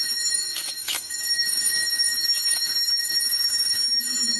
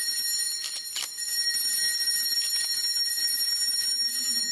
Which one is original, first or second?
second